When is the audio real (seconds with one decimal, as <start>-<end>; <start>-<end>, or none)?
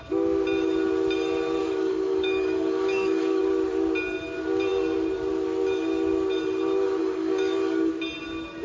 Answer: 0.0-1.6; 3.4-7.0; 7.9-8.6